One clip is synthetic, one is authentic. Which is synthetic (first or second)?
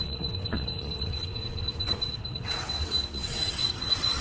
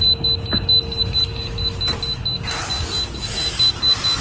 first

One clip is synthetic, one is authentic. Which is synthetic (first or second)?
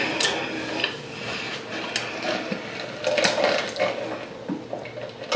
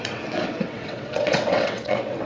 second